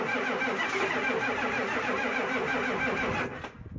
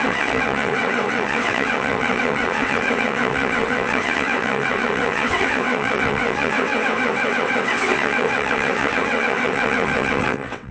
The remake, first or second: second